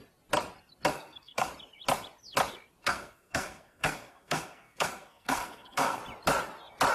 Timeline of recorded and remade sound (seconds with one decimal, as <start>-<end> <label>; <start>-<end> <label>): 0.0-0.9 recorded; 0.9-1.5 remade; 1.5-2.8 recorded; 2.8-6.0 remade; 6.0-6.9 recorded